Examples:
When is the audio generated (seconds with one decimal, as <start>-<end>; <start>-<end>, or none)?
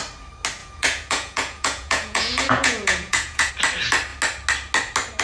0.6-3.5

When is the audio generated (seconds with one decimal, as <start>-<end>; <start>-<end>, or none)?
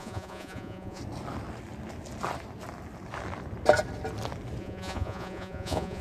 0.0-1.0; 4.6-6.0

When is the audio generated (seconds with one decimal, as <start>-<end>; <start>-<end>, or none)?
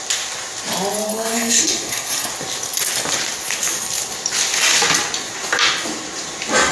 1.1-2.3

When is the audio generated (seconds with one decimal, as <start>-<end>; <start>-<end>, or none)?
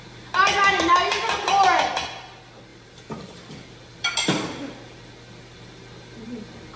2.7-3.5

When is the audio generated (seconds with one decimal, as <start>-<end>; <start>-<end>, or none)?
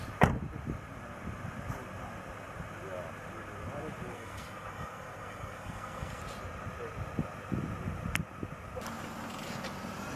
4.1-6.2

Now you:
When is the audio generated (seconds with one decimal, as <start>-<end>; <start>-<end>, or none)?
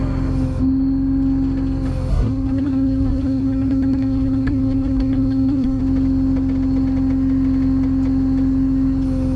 2.1-5.8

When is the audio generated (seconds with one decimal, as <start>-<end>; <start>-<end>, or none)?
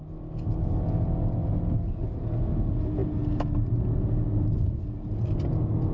none